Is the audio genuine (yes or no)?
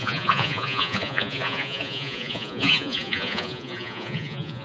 no